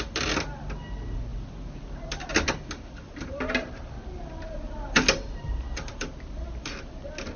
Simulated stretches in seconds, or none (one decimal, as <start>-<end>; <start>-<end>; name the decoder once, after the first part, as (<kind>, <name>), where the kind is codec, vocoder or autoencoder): none